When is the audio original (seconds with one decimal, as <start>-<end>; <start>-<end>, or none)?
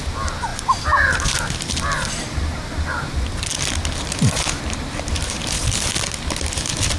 0.0-7.0